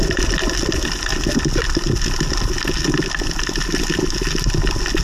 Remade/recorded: recorded